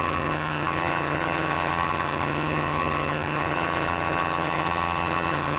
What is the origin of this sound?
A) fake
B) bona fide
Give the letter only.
A